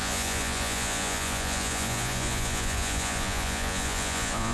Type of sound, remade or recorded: remade